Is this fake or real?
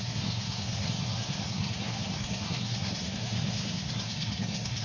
fake